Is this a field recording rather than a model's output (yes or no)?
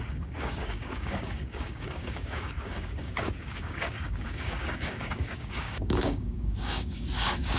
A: no